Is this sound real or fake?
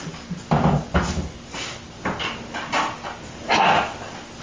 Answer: real